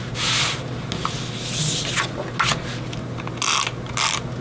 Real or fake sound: real